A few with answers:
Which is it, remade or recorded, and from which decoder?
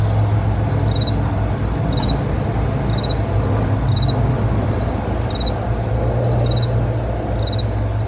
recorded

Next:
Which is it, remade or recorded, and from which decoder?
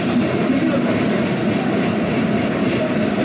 recorded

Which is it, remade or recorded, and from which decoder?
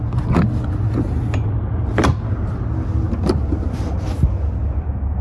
recorded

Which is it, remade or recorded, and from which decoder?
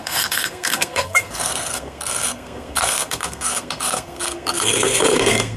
remade, codec, SNAC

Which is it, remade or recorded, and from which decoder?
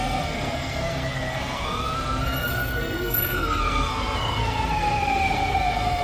remade, codec, SNAC